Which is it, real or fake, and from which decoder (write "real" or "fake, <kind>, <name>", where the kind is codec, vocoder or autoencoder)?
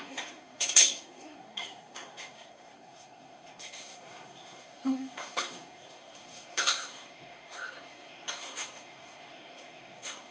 fake, codec, SNAC